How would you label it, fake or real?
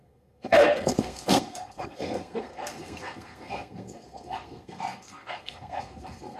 fake